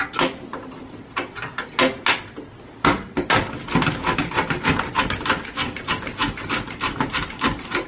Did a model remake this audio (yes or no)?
no